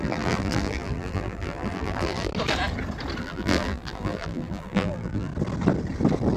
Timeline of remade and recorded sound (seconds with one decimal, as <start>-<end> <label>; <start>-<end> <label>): 0.0-2.3 remade; 2.3-3.2 recorded; 3.2-5.3 remade; 5.3-6.4 recorded

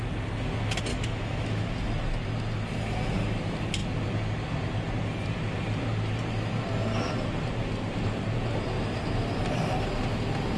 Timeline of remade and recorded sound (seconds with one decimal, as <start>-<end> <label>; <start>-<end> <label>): 0.0-0.9 recorded; 0.9-1.7 remade; 1.7-10.6 recorded

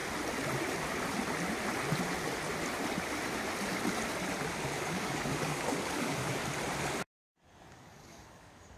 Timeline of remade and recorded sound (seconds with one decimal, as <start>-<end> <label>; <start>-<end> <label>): 0.0-4.8 recorded; 4.8-6.4 remade; 6.4-7.7 recorded; 7.7-8.8 remade

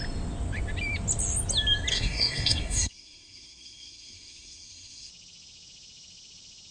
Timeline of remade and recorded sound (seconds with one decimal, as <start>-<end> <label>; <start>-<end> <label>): 0.0-1.9 recorded; 1.9-5.1 remade; 5.1-6.7 recorded

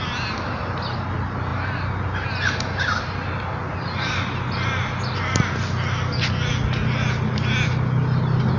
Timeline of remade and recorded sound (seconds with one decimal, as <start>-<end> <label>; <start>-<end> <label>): 0.0-8.6 recorded